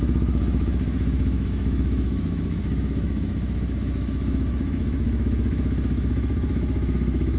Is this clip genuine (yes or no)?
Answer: no